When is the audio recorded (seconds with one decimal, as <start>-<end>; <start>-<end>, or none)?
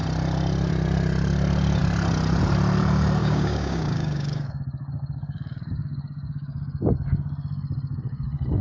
0.0-3.2